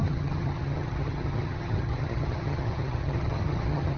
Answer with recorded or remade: remade